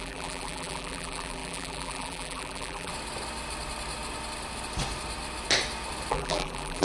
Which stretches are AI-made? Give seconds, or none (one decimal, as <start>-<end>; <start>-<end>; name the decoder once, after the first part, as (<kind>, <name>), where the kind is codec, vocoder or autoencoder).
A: 0.0-2.9 (vocoder, BigVGAN v2); 6.1-6.8